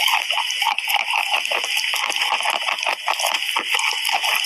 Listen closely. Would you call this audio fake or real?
real